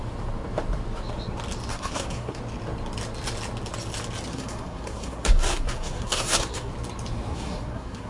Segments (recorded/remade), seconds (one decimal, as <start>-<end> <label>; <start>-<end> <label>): 0.0-1.7 recorded; 1.7-2.4 remade; 2.4-4.3 recorded; 4.3-6.7 remade; 6.7-7.3 recorded; 7.3-8.1 remade